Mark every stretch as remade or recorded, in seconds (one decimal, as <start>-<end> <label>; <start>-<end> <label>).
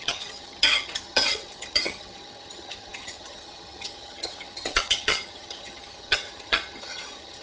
0.0-7.4 remade